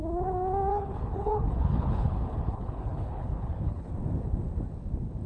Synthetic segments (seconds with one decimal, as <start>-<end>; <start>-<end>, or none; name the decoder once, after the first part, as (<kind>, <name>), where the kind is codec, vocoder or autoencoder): 0.7-3.9 (codec, HILCodec)